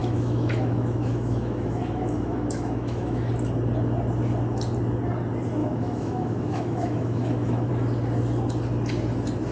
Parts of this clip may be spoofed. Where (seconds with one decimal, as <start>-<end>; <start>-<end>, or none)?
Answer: 0.0-3.3; 5.6-7.7